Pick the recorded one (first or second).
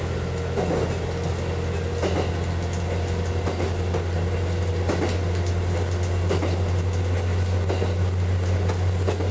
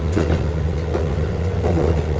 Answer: first